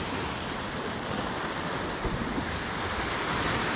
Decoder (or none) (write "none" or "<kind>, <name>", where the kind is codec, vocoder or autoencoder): none